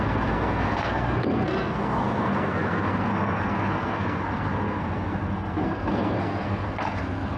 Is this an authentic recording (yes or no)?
no